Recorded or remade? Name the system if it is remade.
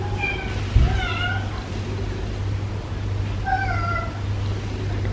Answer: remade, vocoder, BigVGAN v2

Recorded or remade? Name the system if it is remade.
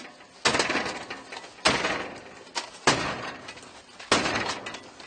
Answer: recorded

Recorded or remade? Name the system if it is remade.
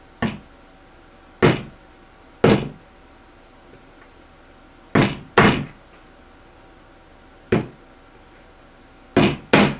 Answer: recorded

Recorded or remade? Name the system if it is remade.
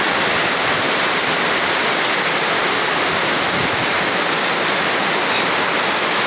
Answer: recorded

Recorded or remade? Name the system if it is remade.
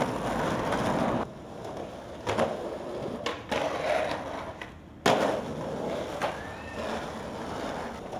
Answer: recorded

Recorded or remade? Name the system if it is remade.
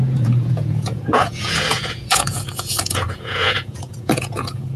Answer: remade, vocoder, Vocos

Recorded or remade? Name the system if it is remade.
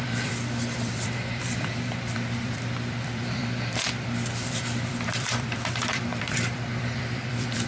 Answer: remade, vocoder, BigVGAN v2